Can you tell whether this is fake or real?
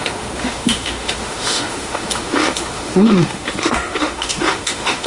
fake